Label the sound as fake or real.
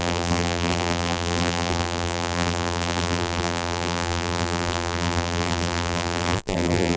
fake